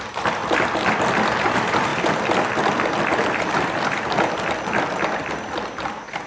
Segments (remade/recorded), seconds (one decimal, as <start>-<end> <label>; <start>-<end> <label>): 0.0-0.4 remade; 0.4-1.4 recorded; 1.4-1.9 remade; 1.9-5.7 recorded; 5.7-6.3 remade